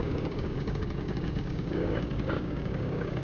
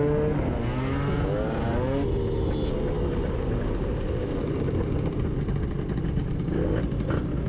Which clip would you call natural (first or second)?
second